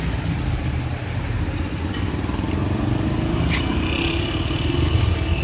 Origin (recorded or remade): recorded